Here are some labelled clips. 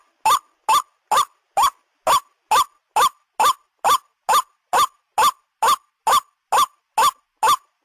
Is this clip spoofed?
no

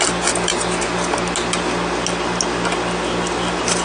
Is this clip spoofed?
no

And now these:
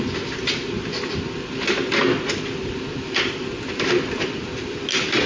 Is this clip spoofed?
no